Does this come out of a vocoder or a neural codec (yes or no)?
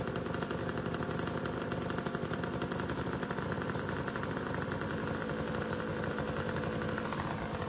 no